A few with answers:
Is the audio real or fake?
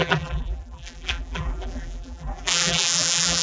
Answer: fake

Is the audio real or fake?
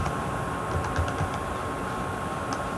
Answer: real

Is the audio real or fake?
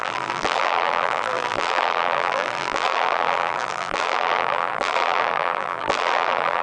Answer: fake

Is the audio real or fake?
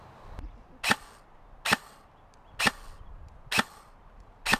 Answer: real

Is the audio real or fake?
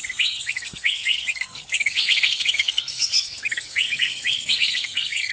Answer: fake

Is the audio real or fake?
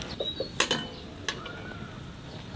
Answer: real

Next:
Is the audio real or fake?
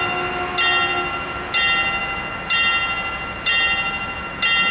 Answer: real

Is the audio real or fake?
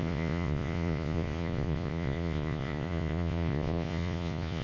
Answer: fake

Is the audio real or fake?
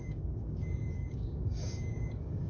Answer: fake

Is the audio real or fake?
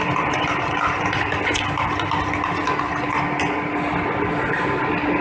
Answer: real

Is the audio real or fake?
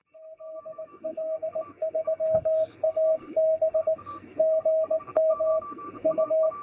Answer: fake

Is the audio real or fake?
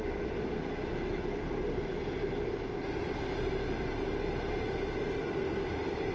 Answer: real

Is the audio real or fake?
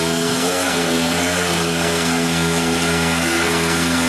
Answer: fake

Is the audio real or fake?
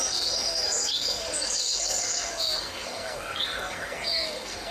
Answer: fake